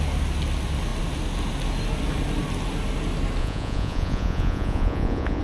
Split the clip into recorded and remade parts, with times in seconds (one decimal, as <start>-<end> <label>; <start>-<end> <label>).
0.0-3.4 recorded; 3.4-5.4 remade